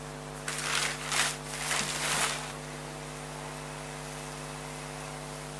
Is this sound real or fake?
real